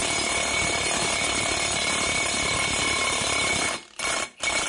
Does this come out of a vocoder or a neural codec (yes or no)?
no